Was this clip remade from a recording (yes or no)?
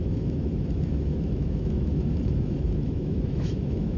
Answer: yes